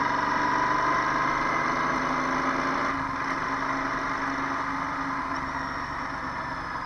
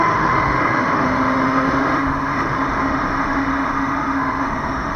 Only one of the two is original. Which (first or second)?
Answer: first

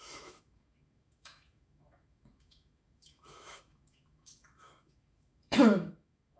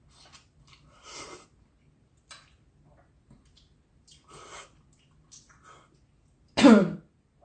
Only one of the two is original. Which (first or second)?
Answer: second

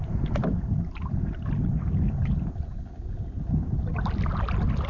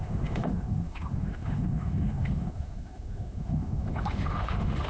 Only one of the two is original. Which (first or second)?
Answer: first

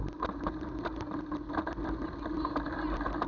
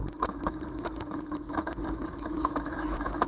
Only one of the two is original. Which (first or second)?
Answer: first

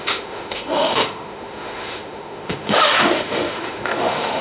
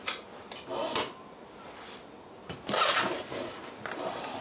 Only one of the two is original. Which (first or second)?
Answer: second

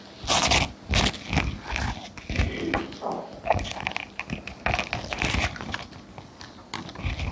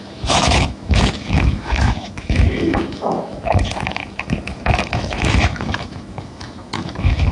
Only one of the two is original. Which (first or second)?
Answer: first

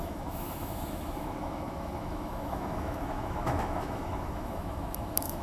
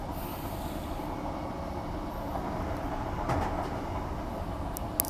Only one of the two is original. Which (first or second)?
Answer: second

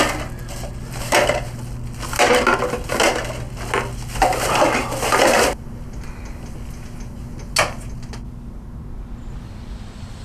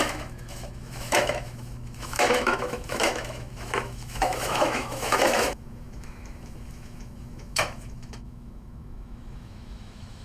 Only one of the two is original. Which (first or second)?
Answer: first